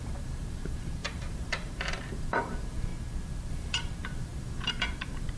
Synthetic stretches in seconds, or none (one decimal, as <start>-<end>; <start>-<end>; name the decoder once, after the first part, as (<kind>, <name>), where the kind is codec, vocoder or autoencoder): 0.0-2.9 (vocoder, BigVGAN v2); 3.5-5.4

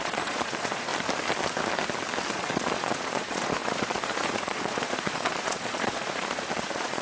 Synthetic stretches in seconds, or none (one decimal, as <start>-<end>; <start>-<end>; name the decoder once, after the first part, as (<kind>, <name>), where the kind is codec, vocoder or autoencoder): 0.0-0.9 (vocoder, Vocos); 2.3-7.0

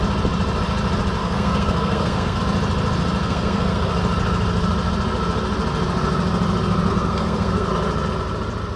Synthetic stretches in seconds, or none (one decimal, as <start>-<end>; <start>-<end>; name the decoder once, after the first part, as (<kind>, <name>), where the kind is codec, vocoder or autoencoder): 1.2-2.4 (codec, SNAC); 3.2-3.9; 6.9-7.7

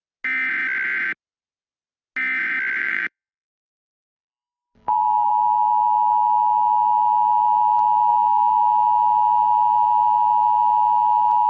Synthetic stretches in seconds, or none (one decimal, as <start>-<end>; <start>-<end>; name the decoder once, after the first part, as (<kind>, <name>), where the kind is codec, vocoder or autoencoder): 2.8-5.3 (vocoder, BigVGAN v2); 8.1-8.6

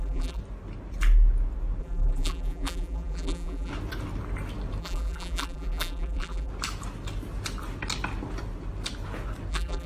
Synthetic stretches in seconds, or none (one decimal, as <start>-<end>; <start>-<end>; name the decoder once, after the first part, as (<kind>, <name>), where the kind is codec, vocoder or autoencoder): 0.0-0.4 (vocoder, BigVGAN v2); 1.8-3.7; 4.8-6.5; 9.5-9.9

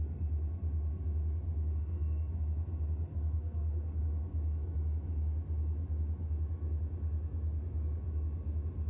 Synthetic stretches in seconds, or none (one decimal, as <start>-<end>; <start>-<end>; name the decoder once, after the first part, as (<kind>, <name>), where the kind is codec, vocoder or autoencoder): 1.8-2.4 (codec, SNAC); 3.1-4.0

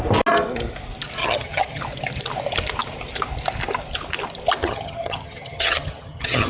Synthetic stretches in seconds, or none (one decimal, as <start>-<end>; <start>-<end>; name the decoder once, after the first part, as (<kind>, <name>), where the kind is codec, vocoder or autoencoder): 1.2-1.8 (vocoder, HiFi-GAN); 4.6-6.5

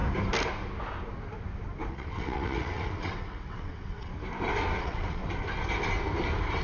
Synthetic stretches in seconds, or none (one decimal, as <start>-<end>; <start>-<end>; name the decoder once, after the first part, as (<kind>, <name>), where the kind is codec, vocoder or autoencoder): 1.9-4.1 (vocoder, WaveNeXt); 4.8-5.2